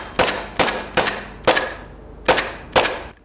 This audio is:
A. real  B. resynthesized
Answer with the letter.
A